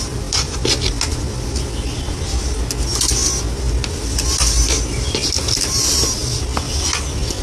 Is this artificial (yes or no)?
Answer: no